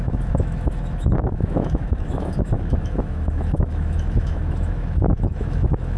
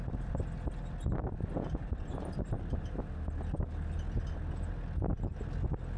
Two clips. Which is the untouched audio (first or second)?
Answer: second